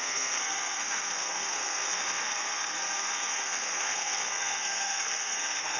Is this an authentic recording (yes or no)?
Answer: no